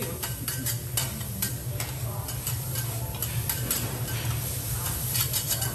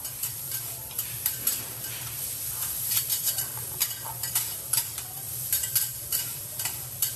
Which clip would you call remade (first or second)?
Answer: second